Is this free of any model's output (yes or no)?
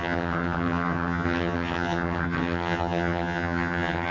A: no